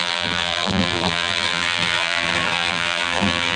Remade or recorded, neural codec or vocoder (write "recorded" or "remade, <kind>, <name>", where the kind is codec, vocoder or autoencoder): remade, vocoder, BigVGAN v2